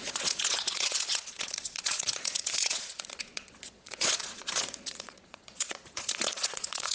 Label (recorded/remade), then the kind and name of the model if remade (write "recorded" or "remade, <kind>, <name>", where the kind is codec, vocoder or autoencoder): remade, vocoder, Vocos